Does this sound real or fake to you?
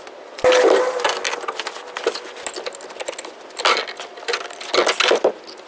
real